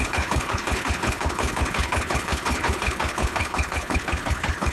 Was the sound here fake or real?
fake